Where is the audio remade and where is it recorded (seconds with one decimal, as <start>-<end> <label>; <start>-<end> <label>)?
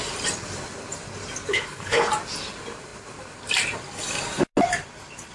0.0-1.5 recorded; 1.5-2.1 remade; 2.1-5.3 recorded